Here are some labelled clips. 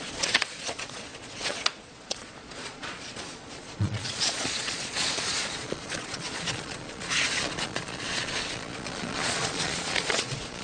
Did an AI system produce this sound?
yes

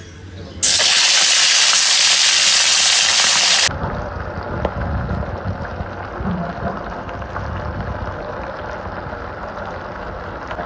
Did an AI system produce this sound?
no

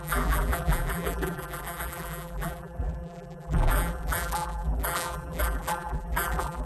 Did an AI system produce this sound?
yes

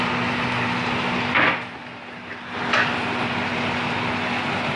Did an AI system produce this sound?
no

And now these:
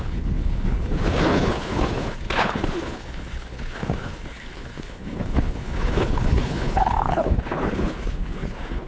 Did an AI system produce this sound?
yes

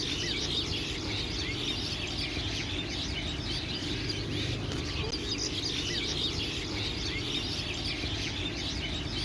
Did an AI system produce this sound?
no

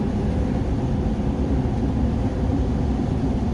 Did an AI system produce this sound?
yes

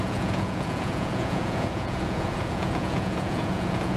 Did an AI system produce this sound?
yes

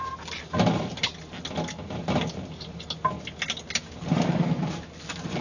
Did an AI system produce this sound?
no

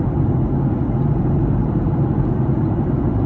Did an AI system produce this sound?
no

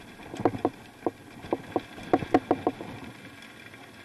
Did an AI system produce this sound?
no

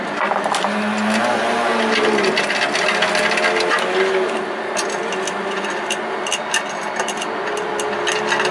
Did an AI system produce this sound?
no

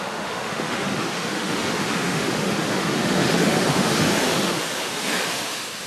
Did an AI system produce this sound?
yes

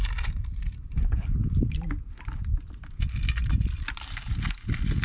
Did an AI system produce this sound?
no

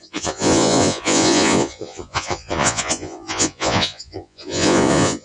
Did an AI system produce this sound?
yes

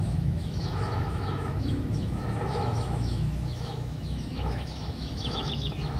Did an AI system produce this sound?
yes